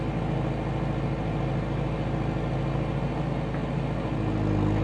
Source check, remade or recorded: recorded